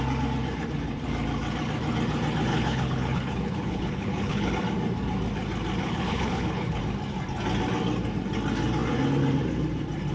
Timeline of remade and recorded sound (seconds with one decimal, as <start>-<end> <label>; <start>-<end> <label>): 0.0-2.5 recorded; 2.5-4.5 remade; 4.5-5.8 recorded; 5.8-6.8 remade; 6.8-10.1 recorded